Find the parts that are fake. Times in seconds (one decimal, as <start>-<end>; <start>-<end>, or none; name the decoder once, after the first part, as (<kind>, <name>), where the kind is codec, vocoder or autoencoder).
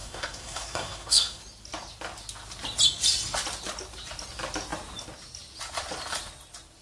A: 0.0-1.4 (codec, SNAC)